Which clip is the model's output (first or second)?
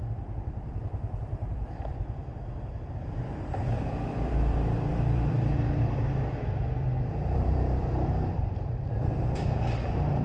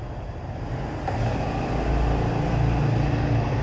first